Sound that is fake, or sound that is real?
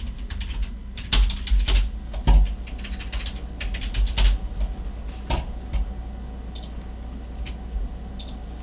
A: real